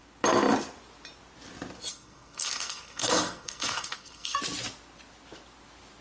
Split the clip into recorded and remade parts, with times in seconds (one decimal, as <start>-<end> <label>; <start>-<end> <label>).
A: 0.0-1.9 recorded; 1.9-4.4 remade; 4.4-6.0 recorded